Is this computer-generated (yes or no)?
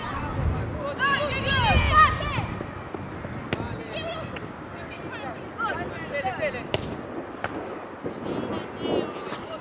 no